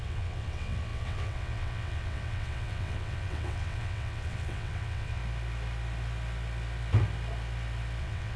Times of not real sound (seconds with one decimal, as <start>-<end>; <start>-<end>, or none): 0.0-5.2; 8.0-8.4

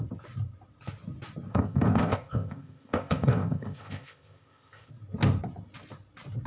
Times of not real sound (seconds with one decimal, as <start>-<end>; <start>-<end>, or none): 1.5-4.9

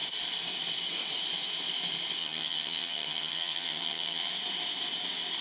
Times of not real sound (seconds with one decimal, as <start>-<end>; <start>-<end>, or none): 2.2-4.3

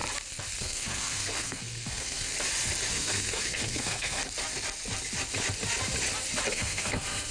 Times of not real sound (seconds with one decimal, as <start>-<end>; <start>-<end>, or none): 0.6-2.3; 2.9-4.2; 6.5-7.3

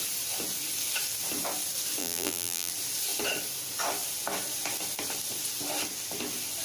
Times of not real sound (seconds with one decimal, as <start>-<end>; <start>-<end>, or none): 2.0-2.7